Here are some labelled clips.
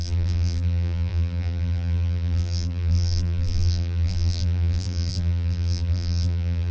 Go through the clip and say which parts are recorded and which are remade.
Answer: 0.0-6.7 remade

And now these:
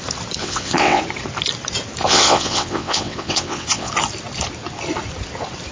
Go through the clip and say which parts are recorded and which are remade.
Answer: 0.0-0.4 recorded; 0.4-1.0 remade; 1.0-2.0 recorded; 2.0-3.9 remade; 3.9-5.7 recorded

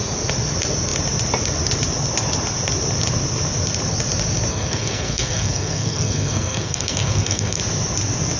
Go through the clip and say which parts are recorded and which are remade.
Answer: 0.0-4.5 recorded; 4.5-7.6 remade; 7.6-8.4 recorded

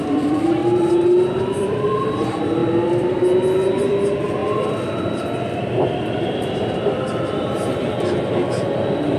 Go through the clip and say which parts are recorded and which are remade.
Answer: 0.0-0.6 remade; 0.6-1.4 recorded; 1.4-2.6 remade; 2.6-3.8 recorded; 3.8-9.2 remade

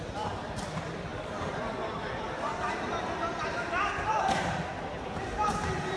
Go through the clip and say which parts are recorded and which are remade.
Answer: 0.0-6.0 remade

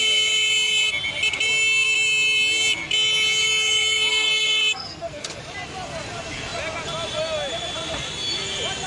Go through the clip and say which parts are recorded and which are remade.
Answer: 0.0-4.1 recorded; 4.1-5.4 remade; 5.4-8.9 recorded